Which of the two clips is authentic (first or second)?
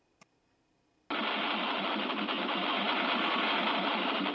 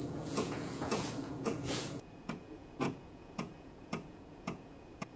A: first